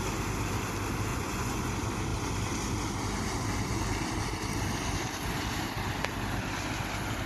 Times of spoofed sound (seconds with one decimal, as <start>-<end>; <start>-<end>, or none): 1.1-1.7